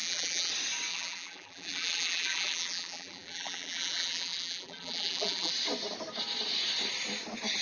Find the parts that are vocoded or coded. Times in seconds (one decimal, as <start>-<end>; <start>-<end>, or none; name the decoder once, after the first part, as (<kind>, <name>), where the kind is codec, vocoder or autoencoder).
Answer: 0.0-0.5 (vocoder, BigVGAN v2); 0.9-5.5